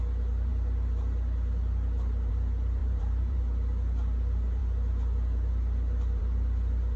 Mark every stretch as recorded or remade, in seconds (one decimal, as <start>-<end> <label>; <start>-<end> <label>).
0.0-2.8 recorded; 2.8-3.4 remade; 3.4-7.0 recorded